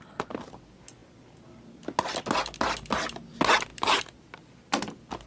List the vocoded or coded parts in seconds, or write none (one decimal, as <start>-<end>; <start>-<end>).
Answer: none